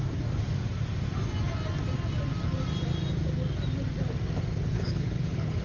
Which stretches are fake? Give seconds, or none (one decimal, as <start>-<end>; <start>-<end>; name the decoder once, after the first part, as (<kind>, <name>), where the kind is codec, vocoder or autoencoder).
4.7-5.6 (codec, HILCodec)